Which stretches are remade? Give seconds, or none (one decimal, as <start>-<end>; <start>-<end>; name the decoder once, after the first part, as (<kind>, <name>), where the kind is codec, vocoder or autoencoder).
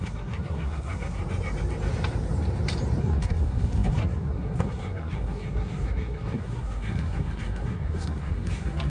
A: 0.0-1.2 (codec, SNAC); 3.0-8.9